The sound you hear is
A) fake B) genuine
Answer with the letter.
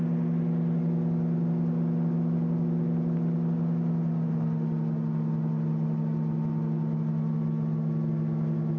B